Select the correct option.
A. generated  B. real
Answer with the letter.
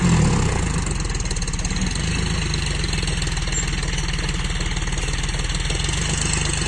B